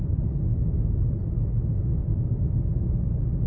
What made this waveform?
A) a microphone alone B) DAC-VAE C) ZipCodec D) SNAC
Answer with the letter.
A